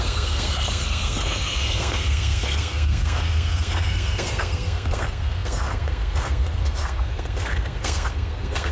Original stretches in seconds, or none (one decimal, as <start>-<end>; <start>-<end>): none